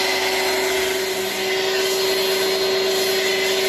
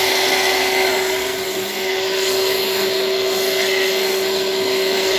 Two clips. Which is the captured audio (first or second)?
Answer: first